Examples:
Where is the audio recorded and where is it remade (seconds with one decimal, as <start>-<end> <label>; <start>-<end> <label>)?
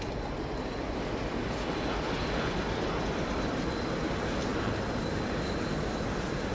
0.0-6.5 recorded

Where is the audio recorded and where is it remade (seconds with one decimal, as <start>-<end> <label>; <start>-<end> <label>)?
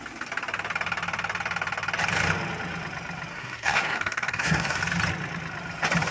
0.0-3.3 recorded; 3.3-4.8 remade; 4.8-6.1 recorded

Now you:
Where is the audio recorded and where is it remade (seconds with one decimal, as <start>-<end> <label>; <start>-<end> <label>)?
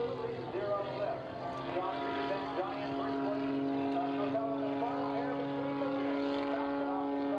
0.0-7.4 recorded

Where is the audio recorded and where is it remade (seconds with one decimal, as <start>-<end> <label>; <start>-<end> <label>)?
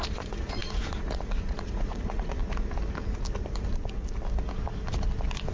0.0-2.4 remade; 2.4-5.5 recorded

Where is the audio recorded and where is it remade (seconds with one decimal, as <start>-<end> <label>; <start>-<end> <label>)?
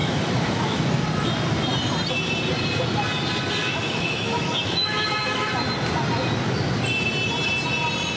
0.0-0.8 remade; 0.8-3.6 recorded; 3.6-5.5 remade; 5.5-8.2 recorded